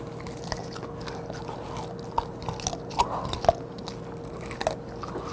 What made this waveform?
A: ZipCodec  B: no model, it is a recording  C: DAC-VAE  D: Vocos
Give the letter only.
B